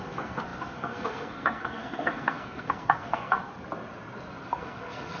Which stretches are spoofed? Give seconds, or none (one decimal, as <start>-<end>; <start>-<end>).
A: 0.0-3.5; 4.5-5.2